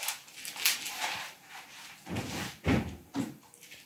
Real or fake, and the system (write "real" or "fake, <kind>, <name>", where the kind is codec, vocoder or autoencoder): real